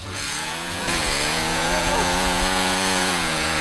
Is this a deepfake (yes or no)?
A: yes